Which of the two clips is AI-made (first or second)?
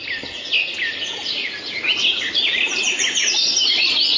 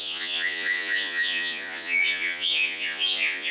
second